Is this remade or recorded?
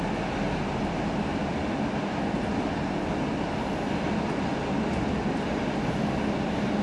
recorded